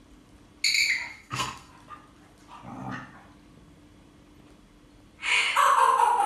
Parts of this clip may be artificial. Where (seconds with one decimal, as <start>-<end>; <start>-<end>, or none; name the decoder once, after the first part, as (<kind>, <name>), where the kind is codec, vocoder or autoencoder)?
1.1-1.7 (codec, SNAC)